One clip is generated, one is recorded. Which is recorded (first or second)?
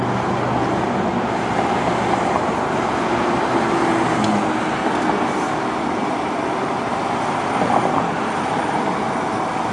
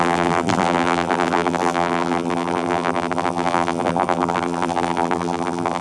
first